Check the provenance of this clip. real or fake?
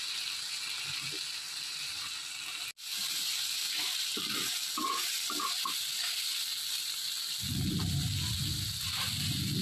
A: real